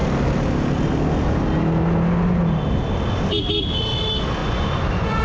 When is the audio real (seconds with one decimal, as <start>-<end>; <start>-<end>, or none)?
0.0-4.4